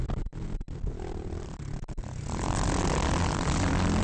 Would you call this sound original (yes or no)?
yes